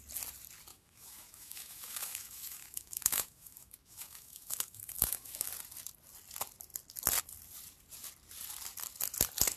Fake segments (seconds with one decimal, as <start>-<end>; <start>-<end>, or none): 0.7-5.5